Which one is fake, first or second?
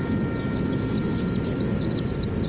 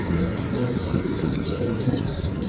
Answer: second